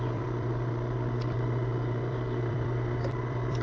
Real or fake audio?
fake